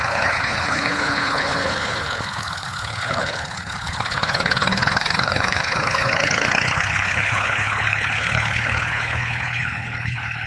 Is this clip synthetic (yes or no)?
yes